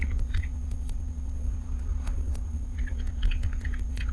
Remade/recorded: remade